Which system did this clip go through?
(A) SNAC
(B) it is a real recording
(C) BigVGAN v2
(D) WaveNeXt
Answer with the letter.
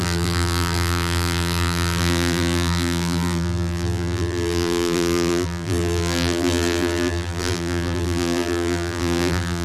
C